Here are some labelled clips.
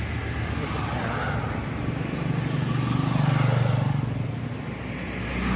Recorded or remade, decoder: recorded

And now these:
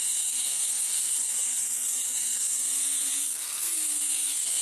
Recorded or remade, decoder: remade, codec, SNAC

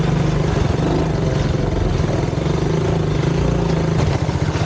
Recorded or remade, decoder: recorded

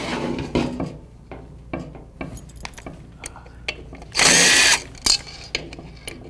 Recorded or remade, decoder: recorded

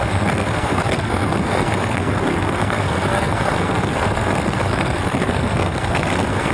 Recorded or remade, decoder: remade, codec, SNAC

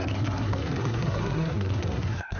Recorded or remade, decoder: remade, codec, SNAC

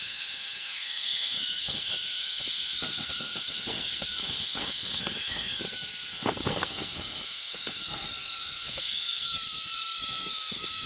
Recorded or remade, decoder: remade, codec, SNAC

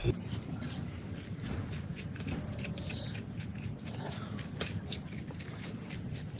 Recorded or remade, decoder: recorded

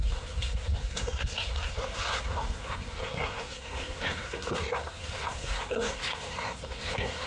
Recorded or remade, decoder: remade, codec, SNAC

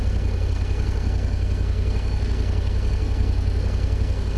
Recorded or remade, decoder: remade, codec, SNAC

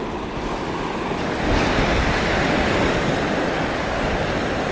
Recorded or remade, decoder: recorded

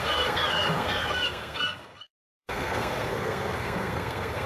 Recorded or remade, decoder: remade, codec, SNAC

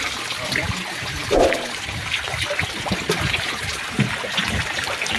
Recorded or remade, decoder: recorded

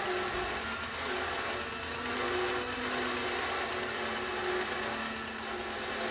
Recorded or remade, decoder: recorded